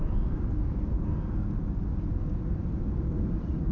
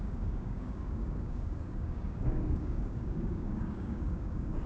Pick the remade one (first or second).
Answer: second